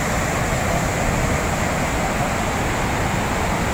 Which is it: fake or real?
real